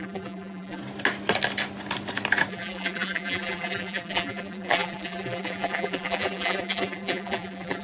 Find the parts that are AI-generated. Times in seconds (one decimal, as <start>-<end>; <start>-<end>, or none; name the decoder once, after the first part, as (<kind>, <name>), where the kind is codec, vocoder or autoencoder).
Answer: 0.0-0.8 (vocoder, BigVGAN v2); 2.5-7.8